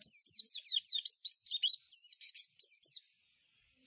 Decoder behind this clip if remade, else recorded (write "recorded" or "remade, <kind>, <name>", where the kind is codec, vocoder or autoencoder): recorded